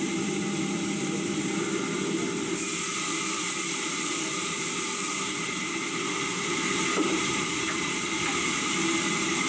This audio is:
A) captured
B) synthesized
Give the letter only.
B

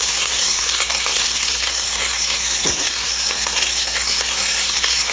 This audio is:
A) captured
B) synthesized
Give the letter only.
B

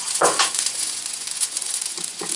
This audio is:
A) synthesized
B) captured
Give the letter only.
A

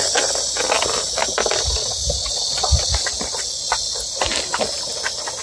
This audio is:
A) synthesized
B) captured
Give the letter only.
B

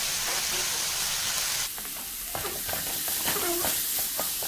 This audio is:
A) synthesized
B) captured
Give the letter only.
B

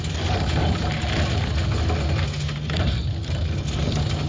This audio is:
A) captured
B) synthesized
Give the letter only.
A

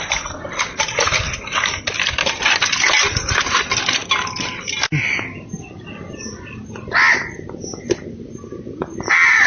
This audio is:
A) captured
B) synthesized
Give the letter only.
A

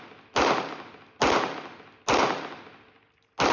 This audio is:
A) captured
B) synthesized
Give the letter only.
A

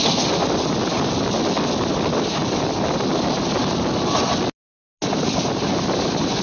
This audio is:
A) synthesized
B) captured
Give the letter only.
B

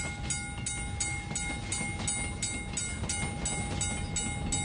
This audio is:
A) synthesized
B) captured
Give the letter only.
B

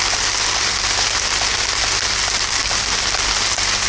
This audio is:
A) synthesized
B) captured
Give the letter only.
B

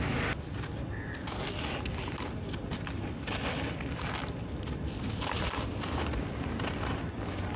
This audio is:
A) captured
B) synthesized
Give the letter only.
A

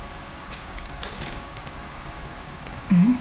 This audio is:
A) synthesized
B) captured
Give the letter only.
A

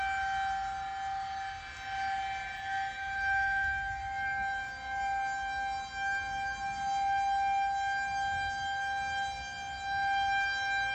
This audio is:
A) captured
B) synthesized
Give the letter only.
A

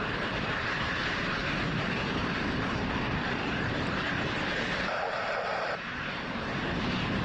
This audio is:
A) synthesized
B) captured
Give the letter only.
A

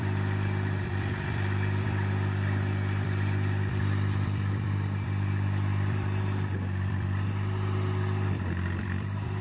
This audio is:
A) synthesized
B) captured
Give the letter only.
A